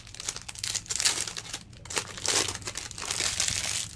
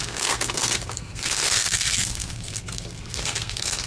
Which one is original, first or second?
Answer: first